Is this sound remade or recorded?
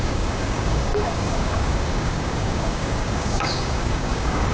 remade